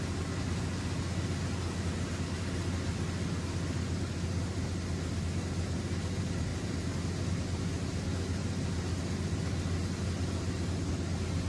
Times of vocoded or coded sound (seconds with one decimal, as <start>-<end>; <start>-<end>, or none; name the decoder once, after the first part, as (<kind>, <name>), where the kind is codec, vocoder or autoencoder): none